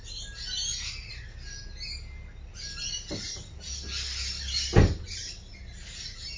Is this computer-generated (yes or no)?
no